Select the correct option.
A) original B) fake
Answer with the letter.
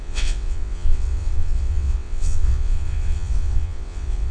B